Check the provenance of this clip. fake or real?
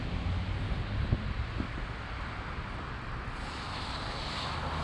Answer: real